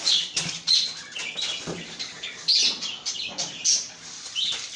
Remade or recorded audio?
recorded